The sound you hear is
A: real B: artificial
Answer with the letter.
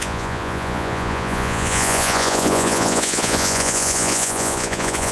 B